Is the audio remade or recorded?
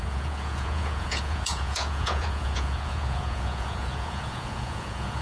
remade